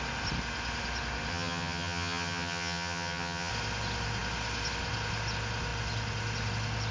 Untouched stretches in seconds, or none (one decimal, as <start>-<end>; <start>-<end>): 0.0-1.3; 3.5-6.9